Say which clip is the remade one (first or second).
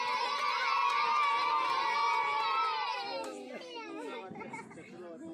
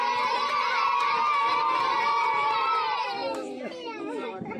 second